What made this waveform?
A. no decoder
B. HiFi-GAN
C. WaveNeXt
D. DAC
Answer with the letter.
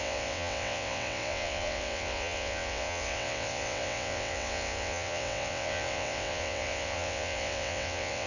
C